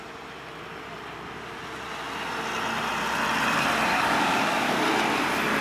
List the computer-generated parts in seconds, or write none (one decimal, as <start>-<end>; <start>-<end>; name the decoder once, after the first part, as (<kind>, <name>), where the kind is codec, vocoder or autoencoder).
3.9-4.8 (codec, DAC)